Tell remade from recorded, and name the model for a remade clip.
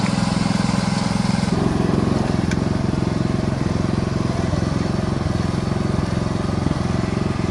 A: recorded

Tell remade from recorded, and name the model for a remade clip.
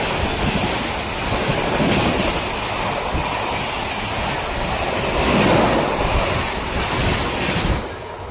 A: recorded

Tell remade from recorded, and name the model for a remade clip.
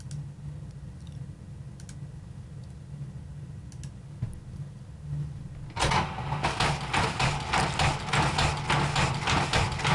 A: recorded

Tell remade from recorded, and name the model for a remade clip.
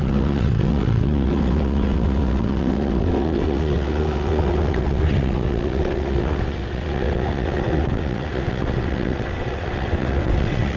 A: remade, vocoder, WaveNeXt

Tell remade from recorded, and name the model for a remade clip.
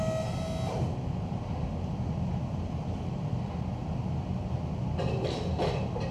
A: recorded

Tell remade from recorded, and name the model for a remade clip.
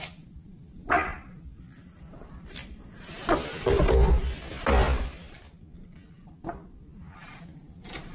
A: recorded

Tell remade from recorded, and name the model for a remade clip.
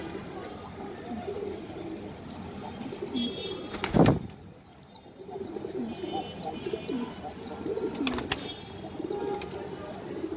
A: recorded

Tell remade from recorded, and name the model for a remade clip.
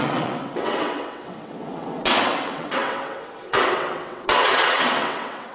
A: remade, vocoder, WaveNeXt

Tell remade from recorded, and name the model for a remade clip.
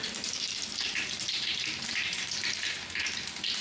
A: remade, vocoder, BigVGAN v2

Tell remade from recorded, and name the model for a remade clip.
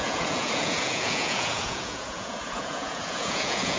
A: remade, vocoder, Vocos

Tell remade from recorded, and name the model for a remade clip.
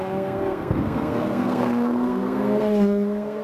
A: remade, codec, SNAC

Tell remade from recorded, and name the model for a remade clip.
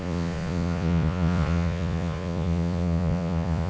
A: remade, vocoder, Vocos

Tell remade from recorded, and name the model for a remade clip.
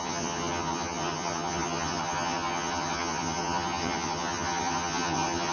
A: remade, vocoder, HiFi-GAN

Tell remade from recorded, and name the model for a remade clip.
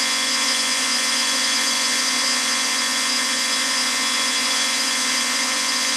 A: remade, vocoder, Vocos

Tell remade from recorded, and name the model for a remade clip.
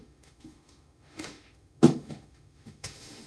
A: remade, autoencoder, DAC-VAE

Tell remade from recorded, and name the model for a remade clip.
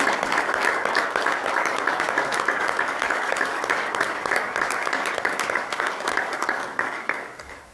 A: remade, codec, DAC